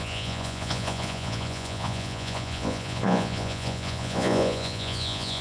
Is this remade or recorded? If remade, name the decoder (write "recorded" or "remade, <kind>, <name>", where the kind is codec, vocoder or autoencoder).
remade, vocoder, Vocos